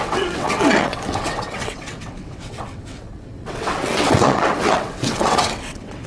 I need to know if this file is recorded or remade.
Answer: remade